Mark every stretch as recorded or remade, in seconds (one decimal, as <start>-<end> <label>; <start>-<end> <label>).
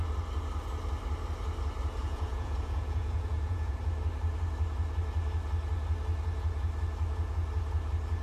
0.0-2.0 recorded; 2.0-3.8 remade; 3.8-8.2 recorded